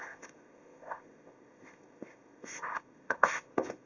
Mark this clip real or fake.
fake